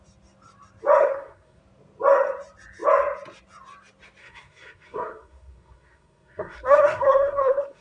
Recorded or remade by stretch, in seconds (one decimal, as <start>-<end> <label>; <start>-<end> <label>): 0.0-1.0 recorded; 1.0-1.6 remade; 1.6-4.2 recorded; 4.2-7.8 remade